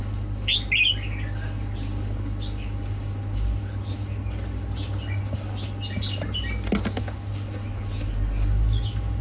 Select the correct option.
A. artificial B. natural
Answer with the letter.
B